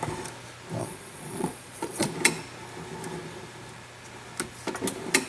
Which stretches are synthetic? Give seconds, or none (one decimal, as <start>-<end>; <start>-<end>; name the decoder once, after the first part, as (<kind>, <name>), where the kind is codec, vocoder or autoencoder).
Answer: 0.8-2.1 (vocoder, Vocos)